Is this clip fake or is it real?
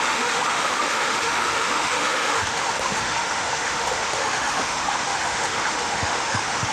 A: fake